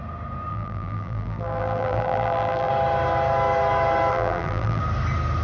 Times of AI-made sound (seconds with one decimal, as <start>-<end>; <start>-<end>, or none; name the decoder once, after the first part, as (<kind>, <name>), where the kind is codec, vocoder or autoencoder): 0.5-2.7 (vocoder, BigVGAN v2); 4.1-4.8